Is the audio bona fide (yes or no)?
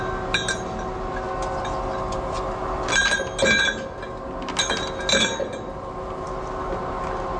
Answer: yes